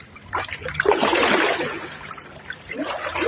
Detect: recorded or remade remade